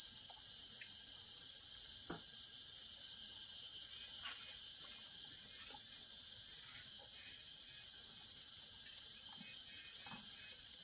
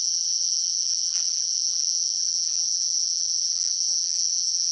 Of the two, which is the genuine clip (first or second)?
first